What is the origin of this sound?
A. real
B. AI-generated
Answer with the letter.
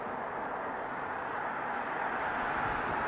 A